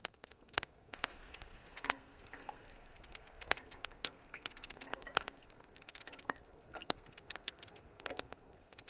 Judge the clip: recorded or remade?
remade